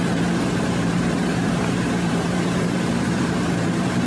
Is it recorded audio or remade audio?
remade